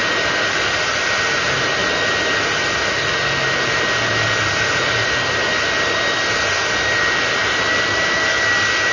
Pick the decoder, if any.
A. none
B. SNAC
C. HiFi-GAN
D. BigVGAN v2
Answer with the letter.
A